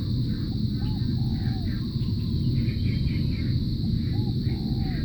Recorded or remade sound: recorded